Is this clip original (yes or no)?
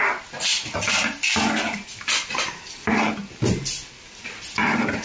yes